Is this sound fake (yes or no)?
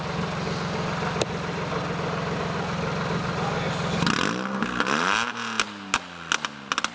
no